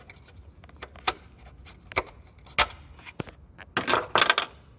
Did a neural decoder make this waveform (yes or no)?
no